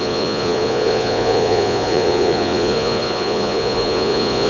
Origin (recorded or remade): remade